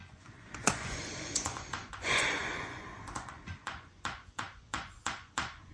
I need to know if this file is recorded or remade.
remade